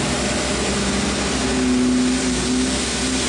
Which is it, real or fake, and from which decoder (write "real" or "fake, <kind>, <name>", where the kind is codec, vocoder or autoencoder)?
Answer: real